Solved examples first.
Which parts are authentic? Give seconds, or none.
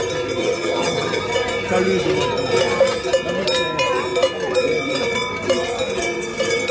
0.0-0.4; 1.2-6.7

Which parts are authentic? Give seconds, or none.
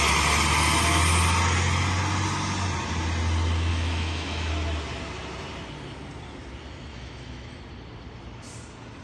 0.0-3.7; 4.5-6.9; 7.6-9.0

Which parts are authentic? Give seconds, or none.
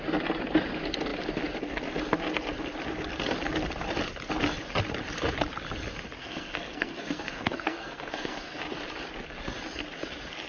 0.0-6.2; 8.6-10.5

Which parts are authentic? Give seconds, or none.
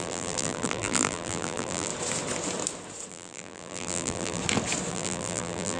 1.9-3.1; 4.4-4.9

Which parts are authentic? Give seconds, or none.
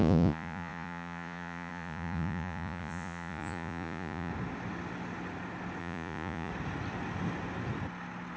4.3-5.8; 6.5-8.4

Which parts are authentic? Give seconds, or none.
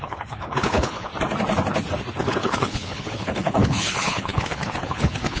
1.1-2.2